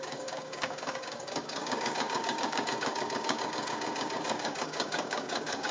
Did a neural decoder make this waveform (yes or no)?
yes